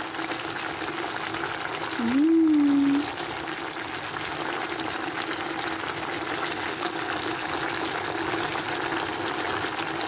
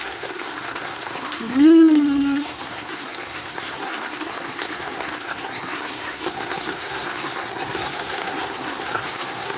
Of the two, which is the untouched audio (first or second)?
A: first